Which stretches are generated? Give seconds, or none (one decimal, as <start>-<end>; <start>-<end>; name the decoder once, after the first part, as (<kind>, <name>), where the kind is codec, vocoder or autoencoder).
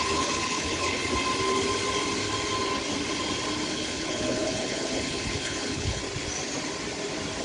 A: 0.0-1.0 (codec, HILCodec); 3.7-6.0